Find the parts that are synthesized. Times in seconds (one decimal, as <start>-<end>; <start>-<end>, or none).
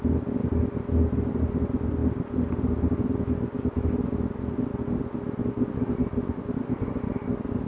none